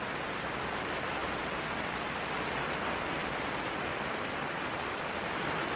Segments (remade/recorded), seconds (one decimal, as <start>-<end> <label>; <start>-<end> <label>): 0.0-5.8 recorded